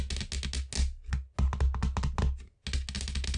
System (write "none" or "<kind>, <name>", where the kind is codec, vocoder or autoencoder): none